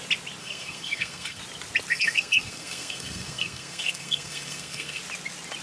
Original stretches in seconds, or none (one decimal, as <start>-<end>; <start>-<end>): 0.0-0.4; 1.4-1.9; 5.0-5.6